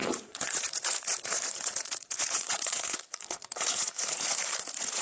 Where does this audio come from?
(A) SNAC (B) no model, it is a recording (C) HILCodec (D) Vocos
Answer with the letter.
D